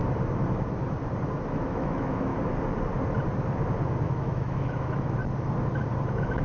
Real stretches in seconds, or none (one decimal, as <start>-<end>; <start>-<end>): 0.0-1.5; 2.3-4.1; 5.2-6.0